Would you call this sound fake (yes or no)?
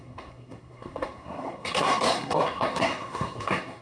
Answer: yes